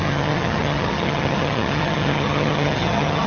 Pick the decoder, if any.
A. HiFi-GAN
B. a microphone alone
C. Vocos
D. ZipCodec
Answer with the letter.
A